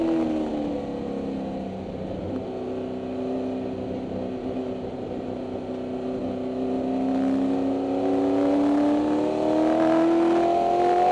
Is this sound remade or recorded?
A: recorded